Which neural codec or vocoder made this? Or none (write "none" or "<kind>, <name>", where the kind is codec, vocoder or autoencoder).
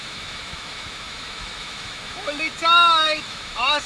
autoencoder, DAC-VAE